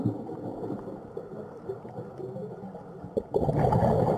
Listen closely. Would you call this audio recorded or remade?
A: recorded